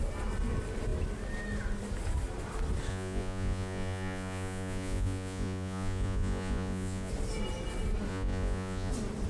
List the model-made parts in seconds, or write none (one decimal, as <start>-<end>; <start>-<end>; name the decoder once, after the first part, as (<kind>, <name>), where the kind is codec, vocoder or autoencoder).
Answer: 2.9-7.1 (vocoder, Vocos); 8.1-8.9

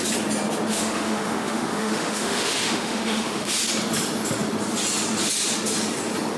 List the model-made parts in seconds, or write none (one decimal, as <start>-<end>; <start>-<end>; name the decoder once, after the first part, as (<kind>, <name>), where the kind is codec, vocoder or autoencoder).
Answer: 0.7-3.5 (autoencoder, DAC-VAE)